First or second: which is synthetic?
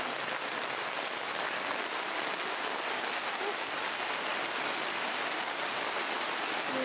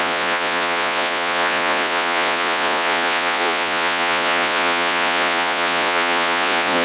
second